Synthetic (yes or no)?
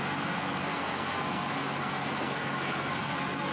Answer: yes